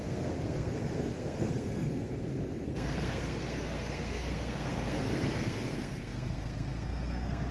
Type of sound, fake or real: fake